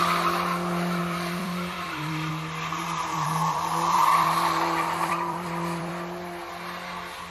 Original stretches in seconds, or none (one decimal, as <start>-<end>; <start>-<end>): 0.0-1.0; 2.3-2.8; 5.9-7.3